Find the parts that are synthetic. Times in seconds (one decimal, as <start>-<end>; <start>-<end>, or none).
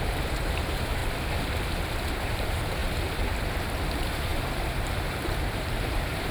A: 0.0-1.0; 2.1-6.3